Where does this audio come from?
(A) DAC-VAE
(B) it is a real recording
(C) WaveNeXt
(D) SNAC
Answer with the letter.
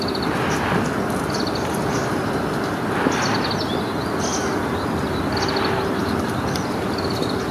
B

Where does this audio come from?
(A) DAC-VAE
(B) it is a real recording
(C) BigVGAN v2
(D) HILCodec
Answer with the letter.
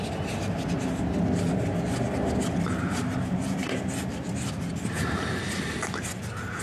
B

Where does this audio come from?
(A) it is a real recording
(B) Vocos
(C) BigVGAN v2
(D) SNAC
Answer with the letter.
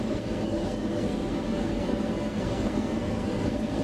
D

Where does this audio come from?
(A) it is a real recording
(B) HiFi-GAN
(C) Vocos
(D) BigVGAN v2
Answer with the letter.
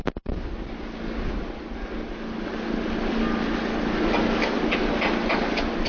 A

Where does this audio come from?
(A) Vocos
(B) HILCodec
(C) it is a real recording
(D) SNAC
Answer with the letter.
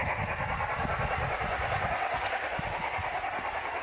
C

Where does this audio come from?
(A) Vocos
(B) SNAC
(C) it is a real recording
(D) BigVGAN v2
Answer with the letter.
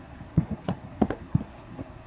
B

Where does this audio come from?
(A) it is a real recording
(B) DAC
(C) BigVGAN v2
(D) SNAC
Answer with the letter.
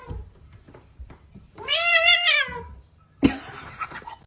C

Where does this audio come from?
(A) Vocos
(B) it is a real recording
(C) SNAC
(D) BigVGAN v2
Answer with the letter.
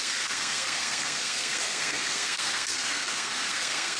C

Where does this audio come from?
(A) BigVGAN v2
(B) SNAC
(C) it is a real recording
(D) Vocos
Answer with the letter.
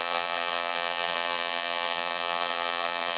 A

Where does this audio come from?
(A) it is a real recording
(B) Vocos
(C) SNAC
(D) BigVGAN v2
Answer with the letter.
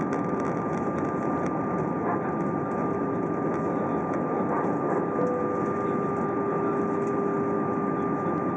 A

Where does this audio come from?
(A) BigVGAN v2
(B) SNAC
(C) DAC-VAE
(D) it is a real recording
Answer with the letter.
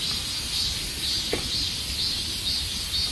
A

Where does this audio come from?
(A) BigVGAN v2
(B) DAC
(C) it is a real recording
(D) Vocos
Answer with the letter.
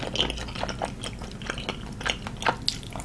C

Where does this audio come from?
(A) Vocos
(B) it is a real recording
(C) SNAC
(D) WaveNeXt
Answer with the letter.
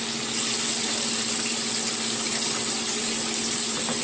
B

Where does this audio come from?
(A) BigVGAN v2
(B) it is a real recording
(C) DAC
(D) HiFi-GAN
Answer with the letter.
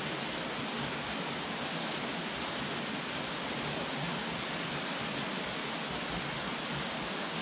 B